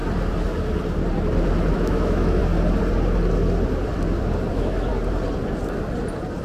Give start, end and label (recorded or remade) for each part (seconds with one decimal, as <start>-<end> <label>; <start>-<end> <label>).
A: 0.0-1.7 recorded; 1.7-2.4 remade; 2.4-4.5 recorded; 4.5-4.9 remade; 4.9-6.4 recorded